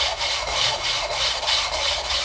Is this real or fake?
fake